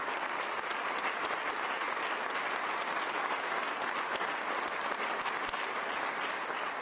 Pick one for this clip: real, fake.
real